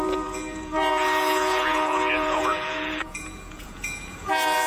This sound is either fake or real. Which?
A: fake